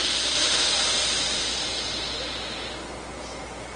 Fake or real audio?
real